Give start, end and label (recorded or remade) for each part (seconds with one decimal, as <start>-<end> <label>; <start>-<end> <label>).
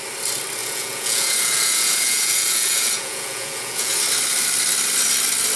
0.0-0.6 recorded; 0.6-4.0 remade; 4.0-5.6 recorded